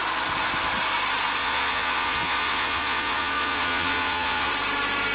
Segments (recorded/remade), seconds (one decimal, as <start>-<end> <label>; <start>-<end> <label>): 0.0-1.4 recorded; 1.4-4.5 remade; 4.5-5.1 recorded